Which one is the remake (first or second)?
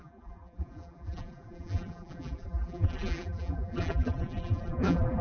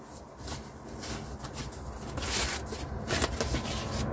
first